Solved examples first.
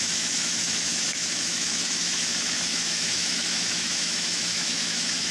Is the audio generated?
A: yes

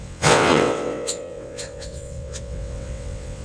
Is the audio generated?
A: yes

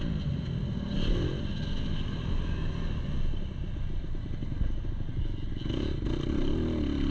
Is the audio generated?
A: no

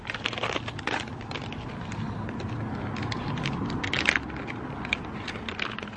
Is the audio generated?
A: no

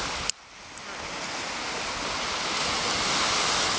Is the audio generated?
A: no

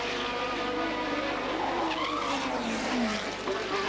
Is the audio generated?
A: no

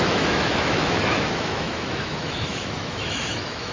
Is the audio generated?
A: yes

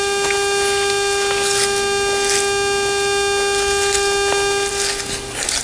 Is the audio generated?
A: no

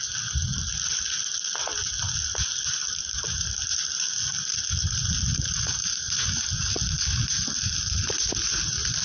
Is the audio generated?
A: no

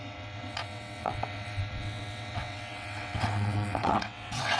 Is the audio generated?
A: yes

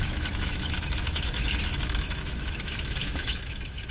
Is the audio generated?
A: yes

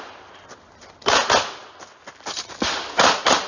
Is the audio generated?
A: no